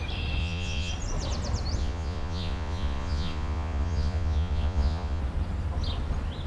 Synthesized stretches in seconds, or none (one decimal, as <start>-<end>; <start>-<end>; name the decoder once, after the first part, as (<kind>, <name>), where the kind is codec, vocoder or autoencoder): 0.4-0.9 (vocoder, Vocos); 1.8-5.2